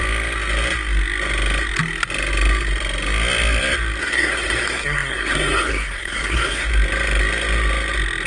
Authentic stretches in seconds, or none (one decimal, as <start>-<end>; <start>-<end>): 0.0-4.0; 6.7-8.3